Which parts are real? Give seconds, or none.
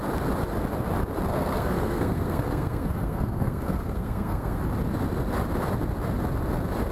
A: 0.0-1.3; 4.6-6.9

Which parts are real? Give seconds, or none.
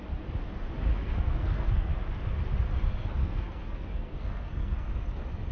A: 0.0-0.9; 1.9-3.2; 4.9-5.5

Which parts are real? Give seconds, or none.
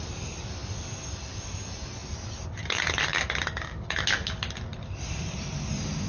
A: 0.0-4.7; 5.5-6.1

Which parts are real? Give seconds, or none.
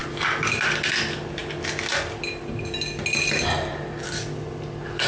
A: 0.0-5.1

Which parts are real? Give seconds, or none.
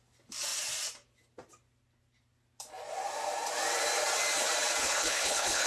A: 0.0-4.8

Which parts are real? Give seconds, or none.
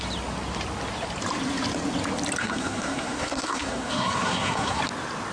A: 0.0-2.4; 4.8-5.3